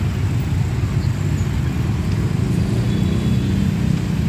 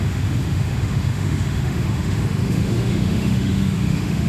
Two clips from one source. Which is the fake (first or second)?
second